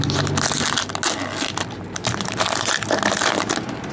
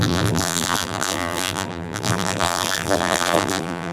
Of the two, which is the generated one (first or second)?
second